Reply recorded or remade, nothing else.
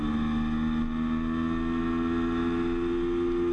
recorded